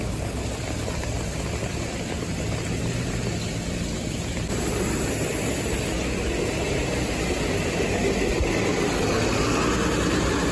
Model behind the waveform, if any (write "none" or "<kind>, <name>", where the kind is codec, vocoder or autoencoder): none